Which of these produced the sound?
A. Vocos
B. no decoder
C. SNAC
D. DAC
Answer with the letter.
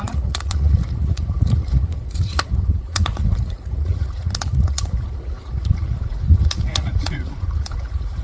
A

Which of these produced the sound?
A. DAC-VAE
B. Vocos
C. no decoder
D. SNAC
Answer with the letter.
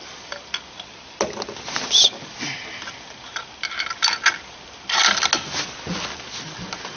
C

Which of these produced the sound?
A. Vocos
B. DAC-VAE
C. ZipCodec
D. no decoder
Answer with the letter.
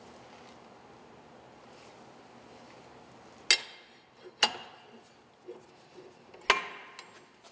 D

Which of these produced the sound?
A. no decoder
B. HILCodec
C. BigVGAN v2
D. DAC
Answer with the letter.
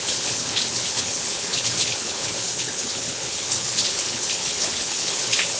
B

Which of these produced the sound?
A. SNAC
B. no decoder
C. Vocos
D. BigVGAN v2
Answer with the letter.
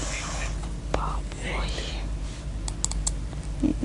B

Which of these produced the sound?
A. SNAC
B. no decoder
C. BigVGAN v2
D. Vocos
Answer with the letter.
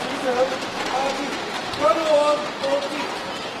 B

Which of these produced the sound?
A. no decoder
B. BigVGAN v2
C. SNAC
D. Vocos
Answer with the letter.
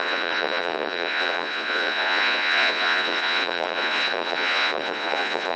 D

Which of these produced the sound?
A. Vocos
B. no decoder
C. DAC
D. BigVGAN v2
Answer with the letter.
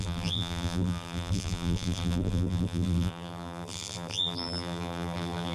D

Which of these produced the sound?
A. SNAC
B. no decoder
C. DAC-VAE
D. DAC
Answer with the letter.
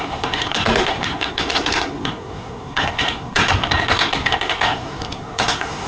A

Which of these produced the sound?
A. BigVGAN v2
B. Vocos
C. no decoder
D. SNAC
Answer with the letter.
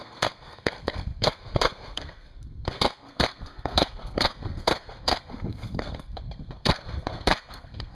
D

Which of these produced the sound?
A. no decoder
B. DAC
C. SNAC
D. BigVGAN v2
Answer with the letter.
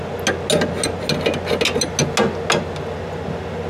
A